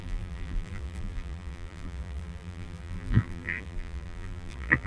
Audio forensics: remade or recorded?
remade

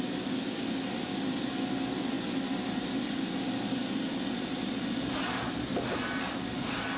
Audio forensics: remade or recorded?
recorded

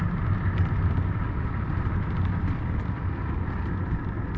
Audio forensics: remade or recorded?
recorded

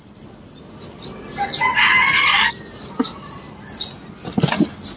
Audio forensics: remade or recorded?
recorded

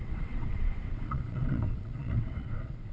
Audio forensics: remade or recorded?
remade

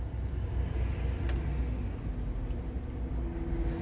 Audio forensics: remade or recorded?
recorded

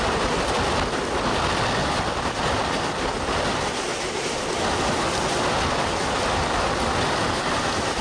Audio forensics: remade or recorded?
recorded